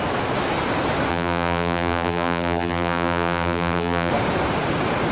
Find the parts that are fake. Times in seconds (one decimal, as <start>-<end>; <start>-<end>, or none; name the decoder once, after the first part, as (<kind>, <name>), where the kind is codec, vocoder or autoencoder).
1.1-4.1 (vocoder, BigVGAN v2)